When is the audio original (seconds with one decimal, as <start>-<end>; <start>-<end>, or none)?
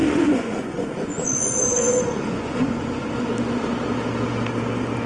3.1-5.1